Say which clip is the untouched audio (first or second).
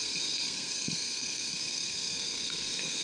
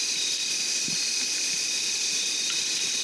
second